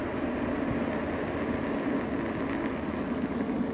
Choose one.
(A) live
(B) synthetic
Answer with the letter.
A